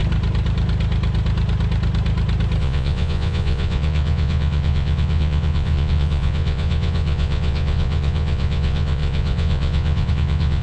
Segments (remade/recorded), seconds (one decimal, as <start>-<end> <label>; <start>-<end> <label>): 0.0-2.6 recorded; 2.6-10.6 remade